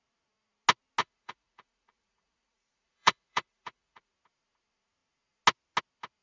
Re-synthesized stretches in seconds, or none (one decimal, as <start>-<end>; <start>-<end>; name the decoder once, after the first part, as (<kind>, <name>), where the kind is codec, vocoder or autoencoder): 1.0-4.1 (vocoder, Vocos)